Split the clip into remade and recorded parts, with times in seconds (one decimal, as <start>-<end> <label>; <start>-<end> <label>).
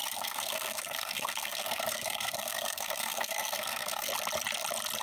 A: 0.0-4.1 remade; 4.1-5.0 recorded